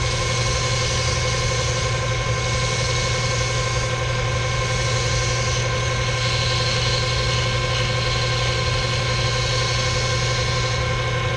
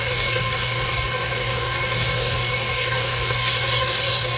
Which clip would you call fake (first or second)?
second